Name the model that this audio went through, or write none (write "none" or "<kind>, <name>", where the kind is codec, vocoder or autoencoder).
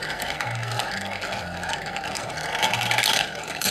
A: codec, SNAC